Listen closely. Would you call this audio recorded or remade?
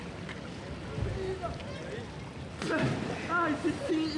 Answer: recorded